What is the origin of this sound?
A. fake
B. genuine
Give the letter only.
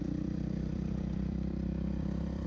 A